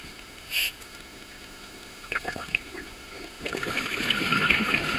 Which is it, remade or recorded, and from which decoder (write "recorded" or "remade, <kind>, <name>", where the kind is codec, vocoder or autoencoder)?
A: remade, autoencoder, DAC-VAE